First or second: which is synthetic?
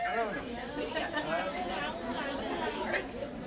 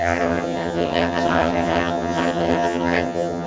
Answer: second